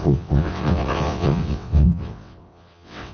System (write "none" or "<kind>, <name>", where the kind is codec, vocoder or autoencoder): vocoder, WaveNeXt